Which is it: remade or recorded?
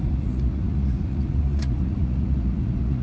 remade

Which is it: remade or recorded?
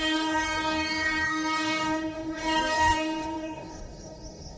remade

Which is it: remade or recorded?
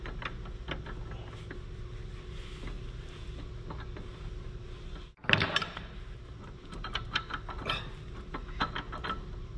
recorded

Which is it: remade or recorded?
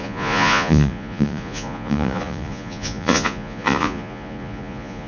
remade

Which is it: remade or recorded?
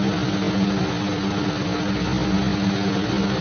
recorded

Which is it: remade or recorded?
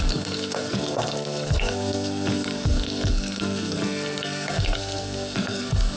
remade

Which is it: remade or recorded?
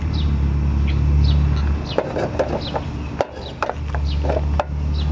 recorded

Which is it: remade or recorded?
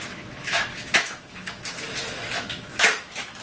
remade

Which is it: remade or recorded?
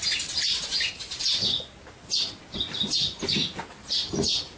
recorded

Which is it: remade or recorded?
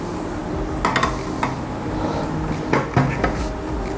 recorded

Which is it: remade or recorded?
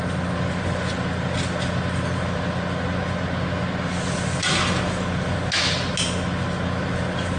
recorded